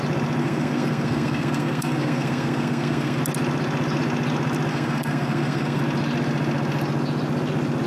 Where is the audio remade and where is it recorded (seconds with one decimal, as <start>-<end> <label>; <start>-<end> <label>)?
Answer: 0.0-0.4 recorded; 0.4-3.2 remade; 3.2-4.7 recorded; 4.7-5.8 remade; 5.8-7.9 recorded

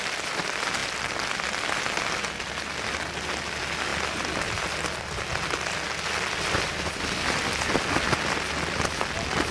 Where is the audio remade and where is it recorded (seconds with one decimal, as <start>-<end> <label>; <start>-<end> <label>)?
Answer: 0.0-9.5 recorded